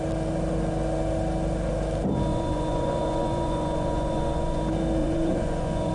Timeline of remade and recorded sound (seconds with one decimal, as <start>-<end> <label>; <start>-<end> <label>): 0.0-2.3 recorded; 2.3-4.6 remade; 4.6-5.0 recorded; 5.0-5.9 remade